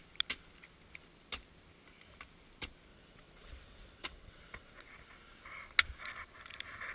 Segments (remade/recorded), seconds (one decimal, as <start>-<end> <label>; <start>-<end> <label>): 0.0-2.9 recorded; 2.9-4.9 remade; 4.9-6.9 recorded